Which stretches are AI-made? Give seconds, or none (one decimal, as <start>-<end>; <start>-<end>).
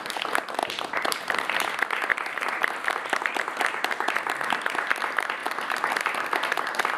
0.6-1.2; 2.1-2.7